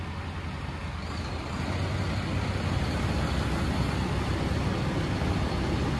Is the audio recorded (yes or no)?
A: yes